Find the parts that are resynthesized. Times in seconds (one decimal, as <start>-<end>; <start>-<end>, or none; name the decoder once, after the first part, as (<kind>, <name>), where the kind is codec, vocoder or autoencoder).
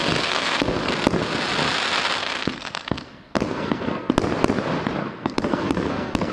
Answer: 0.0-0.9 (codec, SNAC); 2.2-4.1; 5.0-6.3